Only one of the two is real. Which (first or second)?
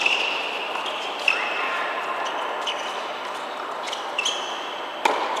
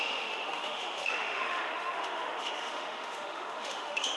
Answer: first